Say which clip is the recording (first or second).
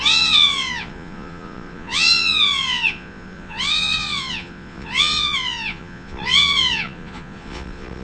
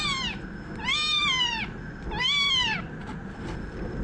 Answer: second